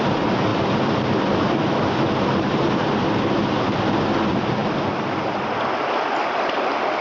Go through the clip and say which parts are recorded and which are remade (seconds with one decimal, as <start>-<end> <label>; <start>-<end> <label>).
0.0-4.6 remade; 4.6-6.2 recorded; 6.2-7.0 remade